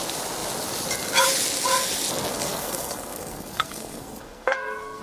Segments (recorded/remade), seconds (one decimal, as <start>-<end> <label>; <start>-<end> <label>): 0.0-2.3 recorded; 2.3-5.0 remade